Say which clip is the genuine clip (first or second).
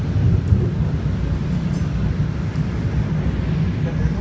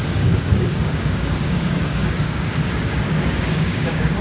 first